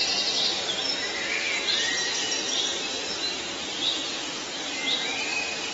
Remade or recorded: recorded